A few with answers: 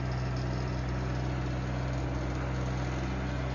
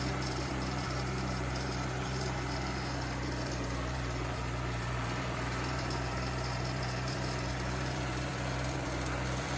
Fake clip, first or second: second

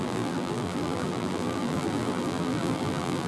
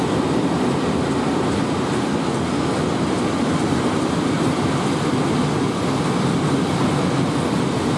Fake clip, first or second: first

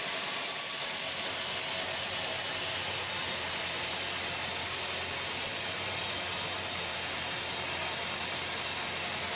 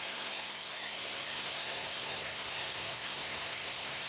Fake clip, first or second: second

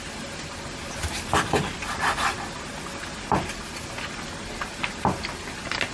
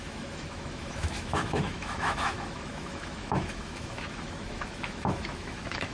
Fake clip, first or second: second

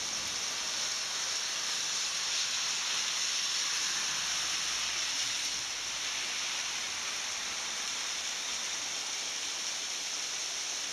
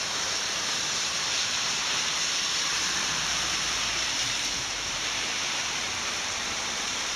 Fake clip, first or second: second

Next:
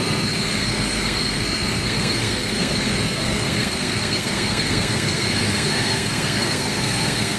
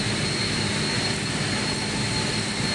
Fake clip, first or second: first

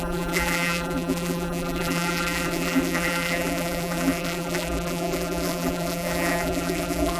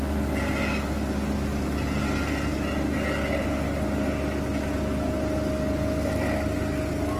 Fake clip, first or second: first